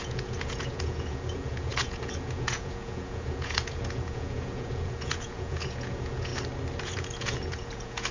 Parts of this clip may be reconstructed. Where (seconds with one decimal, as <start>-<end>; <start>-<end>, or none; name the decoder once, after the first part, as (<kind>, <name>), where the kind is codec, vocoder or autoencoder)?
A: 0.0-6.3 (vocoder, Vocos); 6.8-8.1